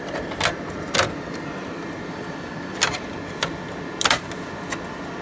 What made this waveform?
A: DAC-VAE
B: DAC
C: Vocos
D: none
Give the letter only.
D